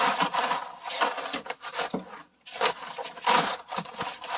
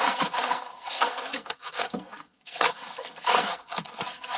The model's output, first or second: second